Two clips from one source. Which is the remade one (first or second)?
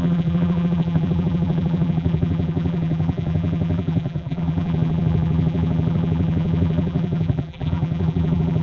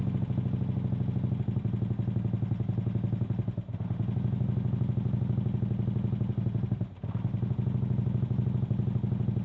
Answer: first